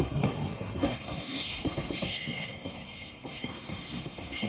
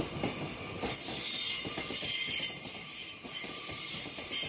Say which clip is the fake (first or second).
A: first